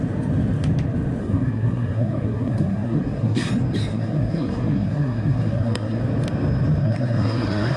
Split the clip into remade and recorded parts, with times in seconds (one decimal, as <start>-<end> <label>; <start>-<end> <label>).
0.0-1.2 recorded; 1.2-3.5 remade; 3.5-3.9 recorded; 3.9-6.0 remade; 6.0-6.8 recorded; 6.8-7.8 remade